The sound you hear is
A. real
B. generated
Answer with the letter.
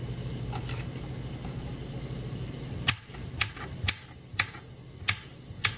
A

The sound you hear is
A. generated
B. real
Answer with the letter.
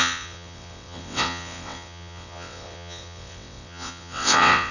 A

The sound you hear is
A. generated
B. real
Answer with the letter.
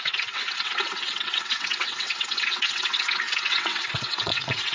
A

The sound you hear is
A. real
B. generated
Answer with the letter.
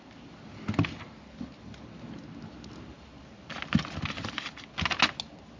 A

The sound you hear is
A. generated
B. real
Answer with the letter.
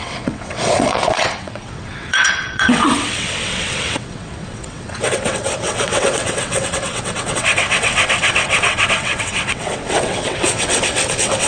A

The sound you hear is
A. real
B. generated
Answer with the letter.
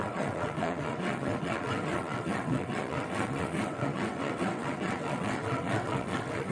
B